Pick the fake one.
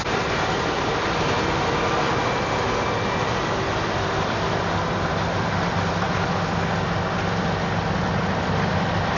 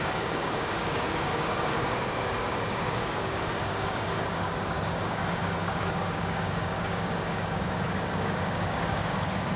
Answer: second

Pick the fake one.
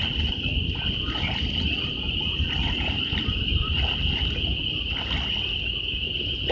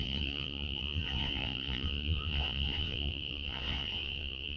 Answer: second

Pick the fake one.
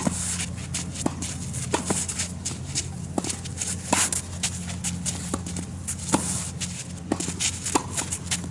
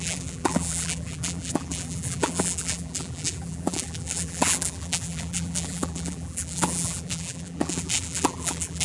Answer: second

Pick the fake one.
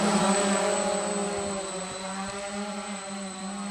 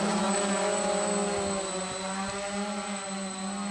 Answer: first